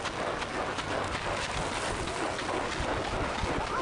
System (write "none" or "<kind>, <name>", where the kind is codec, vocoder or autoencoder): none